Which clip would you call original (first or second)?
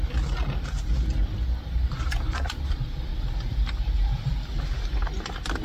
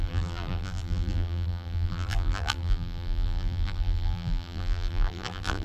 first